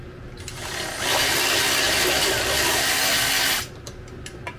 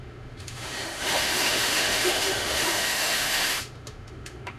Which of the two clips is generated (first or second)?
second